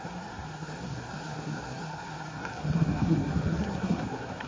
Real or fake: fake